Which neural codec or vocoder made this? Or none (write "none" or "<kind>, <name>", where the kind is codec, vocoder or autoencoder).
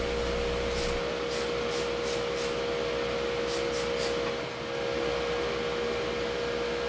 none